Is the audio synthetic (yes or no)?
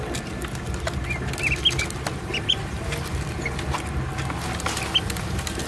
no